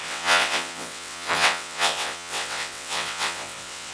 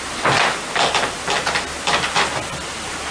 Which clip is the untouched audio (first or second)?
second